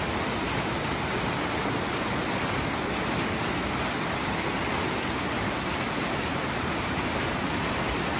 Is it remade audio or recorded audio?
recorded